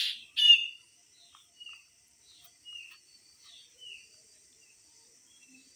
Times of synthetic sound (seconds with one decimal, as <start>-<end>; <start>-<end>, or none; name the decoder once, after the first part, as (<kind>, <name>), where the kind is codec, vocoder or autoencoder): 0.0-5.8 (vocoder, BigVGAN v2)